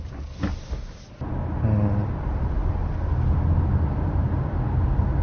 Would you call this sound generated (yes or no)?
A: no